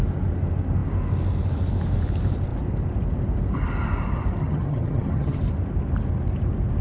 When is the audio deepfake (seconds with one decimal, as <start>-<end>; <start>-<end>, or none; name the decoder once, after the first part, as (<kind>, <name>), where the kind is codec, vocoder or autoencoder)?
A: 4.4-5.4 (vocoder, HiFi-GAN)

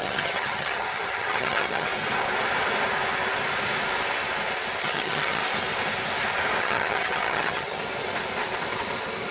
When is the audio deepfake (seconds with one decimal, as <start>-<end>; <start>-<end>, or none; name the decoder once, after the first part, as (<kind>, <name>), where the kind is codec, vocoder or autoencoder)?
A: 0.0-1.9 (vocoder, HiFi-GAN); 4.8-5.4; 6.6-7.8

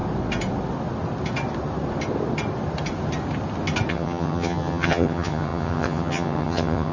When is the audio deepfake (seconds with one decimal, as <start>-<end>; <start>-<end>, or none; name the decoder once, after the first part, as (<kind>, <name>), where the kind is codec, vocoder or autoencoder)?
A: 3.9-6.9 (vocoder, HiFi-GAN)

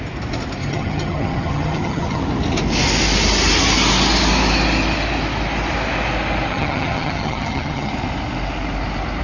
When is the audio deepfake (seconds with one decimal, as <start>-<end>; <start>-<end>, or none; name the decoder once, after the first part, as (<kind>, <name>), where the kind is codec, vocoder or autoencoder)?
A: 0.6-2.2 (vocoder, HiFi-GAN); 6.5-7.9

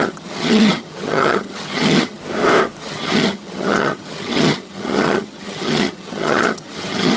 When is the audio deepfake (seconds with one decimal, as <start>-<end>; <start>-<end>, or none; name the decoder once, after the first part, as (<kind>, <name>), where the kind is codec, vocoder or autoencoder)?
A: 0.0-2.2 (vocoder, HiFi-GAN); 2.8-7.2